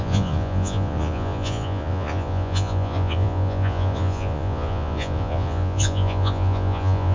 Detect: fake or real fake